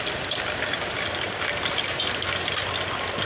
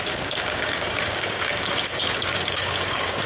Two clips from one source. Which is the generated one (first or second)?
second